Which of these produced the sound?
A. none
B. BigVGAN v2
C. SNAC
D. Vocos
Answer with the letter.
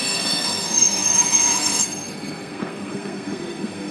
C